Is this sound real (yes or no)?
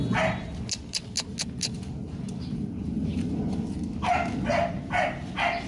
yes